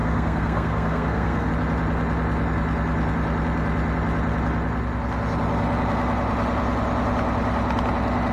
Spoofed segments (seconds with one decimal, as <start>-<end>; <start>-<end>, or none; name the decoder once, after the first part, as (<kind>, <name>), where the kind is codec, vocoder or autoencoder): 0.0-1.5 (codec, SNAC)